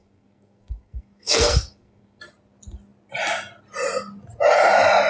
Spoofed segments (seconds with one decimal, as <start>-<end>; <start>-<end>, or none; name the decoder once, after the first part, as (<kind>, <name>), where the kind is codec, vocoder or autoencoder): 0.0-2.2 (codec, SNAC)